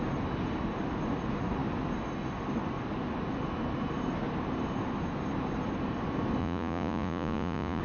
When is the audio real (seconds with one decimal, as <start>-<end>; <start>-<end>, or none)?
0.0-6.4